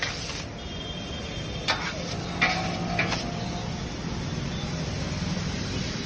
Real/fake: real